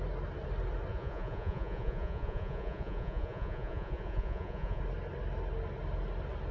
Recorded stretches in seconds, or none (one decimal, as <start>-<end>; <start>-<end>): 0.0-0.9; 4.8-6.5